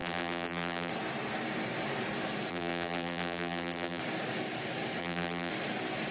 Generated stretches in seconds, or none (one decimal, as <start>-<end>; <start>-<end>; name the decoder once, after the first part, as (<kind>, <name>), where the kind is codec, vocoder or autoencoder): 0.0-0.9 (vocoder, BigVGAN v2); 2.5-4.0; 5.0-5.5